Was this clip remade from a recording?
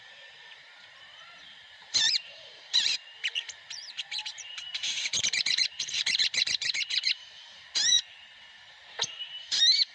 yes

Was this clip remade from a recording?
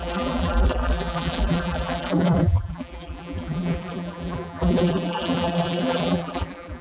yes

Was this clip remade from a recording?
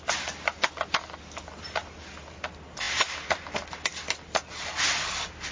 no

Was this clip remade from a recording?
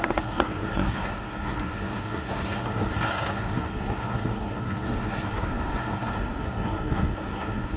yes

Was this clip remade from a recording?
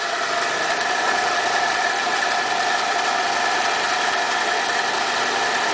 no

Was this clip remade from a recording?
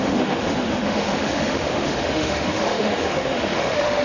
yes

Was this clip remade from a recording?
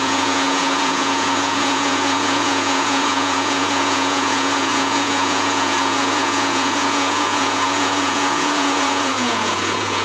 yes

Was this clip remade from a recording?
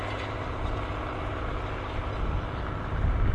no